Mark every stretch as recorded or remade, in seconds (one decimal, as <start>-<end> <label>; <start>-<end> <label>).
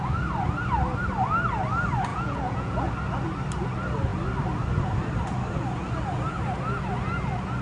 0.0-2.1 recorded; 2.1-2.9 remade; 2.9-7.6 recorded